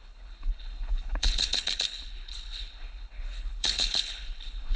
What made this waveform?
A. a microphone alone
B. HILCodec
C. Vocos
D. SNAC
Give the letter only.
B